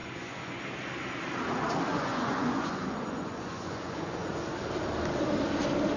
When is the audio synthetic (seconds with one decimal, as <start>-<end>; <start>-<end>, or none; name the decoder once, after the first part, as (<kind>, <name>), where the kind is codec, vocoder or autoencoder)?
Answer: 0.0-0.6 (vocoder, Vocos); 1.9-4.3